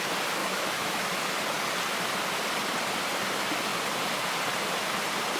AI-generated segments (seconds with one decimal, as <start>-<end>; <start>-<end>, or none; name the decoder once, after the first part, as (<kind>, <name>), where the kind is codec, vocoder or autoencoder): 0.4-1.1 (autoencoder, DAC-VAE)